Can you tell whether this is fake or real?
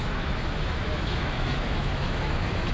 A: fake